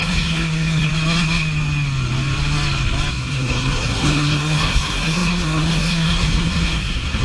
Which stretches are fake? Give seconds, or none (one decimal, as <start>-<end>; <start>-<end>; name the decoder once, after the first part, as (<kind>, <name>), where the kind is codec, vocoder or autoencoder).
0.0-0.9 (codec, SNAC); 3.1-7.2